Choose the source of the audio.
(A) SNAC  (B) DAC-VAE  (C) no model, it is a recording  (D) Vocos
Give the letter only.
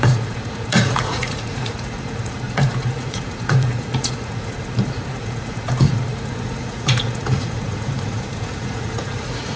D